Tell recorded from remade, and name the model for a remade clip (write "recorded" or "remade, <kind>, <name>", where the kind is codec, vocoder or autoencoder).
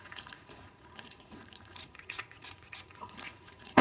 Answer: remade, vocoder, Vocos